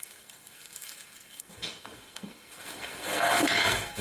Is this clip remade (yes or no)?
yes